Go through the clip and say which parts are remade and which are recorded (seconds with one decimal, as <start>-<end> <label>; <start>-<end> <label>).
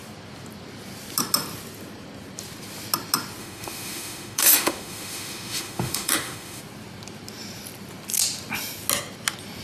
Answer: 0.0-3.4 recorded; 3.4-6.6 remade; 6.6-9.6 recorded